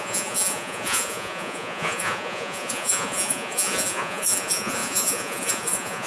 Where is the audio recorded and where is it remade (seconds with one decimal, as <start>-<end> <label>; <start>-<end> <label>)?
0.0-6.1 remade